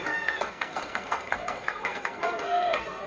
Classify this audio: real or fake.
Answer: fake